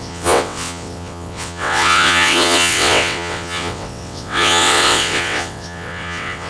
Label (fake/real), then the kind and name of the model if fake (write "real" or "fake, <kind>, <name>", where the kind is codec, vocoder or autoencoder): fake, vocoder, WaveNeXt